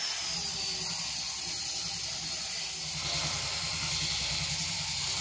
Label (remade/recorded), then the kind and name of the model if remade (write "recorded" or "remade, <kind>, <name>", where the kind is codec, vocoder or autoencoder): recorded